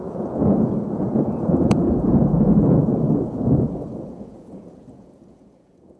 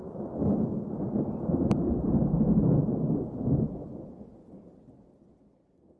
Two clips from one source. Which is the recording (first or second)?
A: second